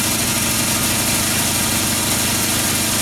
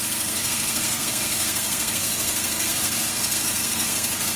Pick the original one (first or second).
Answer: first